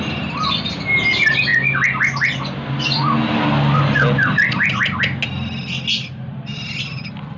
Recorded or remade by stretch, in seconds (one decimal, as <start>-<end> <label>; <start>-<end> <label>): 0.0-7.4 recorded